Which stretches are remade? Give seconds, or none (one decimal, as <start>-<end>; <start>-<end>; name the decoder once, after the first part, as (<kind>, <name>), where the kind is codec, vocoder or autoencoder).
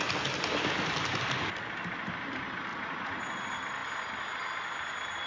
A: 2.7-3.2 (vocoder, Vocos)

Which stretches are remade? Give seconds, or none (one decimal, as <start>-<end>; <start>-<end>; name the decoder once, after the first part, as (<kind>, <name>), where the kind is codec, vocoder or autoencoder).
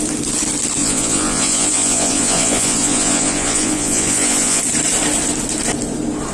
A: 0.8-4.6 (vocoder, Vocos)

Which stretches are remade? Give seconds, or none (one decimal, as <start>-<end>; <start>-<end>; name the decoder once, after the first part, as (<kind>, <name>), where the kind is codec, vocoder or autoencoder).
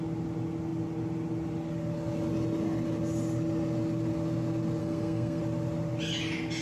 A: 4.8-5.4 (codec, SNAC)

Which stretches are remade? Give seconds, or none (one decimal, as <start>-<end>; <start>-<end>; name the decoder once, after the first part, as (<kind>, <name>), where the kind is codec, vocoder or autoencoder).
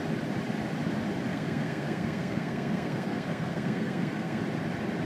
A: 1.3-4.4 (codec, SNAC)